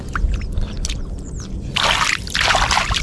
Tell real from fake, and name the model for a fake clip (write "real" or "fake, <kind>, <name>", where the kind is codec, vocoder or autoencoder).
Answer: real